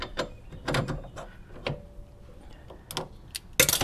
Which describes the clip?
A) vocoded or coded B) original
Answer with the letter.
B